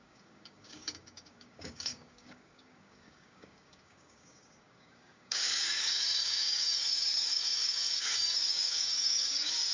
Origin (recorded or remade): remade